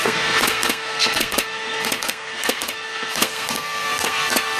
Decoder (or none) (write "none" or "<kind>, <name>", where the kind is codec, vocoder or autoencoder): codec, SNAC